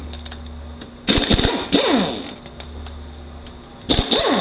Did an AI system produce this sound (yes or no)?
no